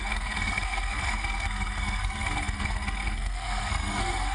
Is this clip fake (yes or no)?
yes